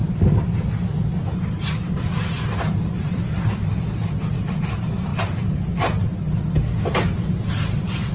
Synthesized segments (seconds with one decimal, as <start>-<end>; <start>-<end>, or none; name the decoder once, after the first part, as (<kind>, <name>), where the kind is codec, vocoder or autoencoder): 2.3-5.1 (vocoder, BigVGAN v2); 7.5-8.1